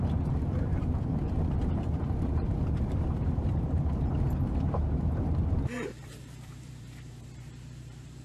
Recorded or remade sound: remade